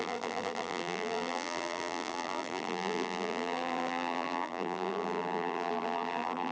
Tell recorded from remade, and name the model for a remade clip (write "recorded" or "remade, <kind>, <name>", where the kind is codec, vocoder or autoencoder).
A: remade, vocoder, BigVGAN v2